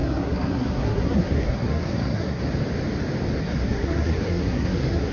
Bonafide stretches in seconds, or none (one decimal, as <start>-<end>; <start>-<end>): 2.4-3.4